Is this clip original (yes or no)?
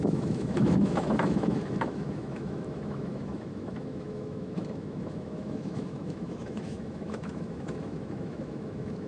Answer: no